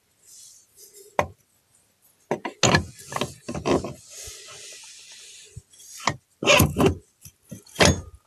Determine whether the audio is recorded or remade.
recorded